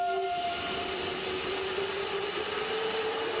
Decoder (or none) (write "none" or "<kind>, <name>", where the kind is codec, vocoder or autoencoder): none